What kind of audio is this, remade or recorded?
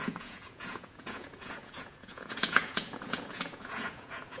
remade